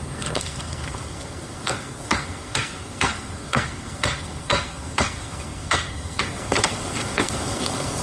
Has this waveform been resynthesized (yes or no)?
yes